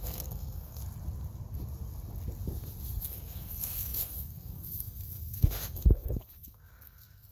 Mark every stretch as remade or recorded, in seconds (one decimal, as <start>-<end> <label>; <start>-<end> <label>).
0.0-0.8 remade; 0.8-3.0 recorded; 3.0-7.3 remade